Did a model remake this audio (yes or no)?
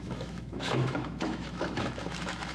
yes